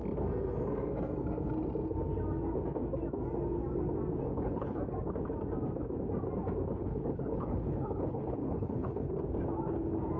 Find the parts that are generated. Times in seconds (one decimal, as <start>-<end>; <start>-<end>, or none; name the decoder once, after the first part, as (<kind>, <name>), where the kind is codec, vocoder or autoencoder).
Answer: 4.3-4.8 (codec, HILCodec); 6.8-9.1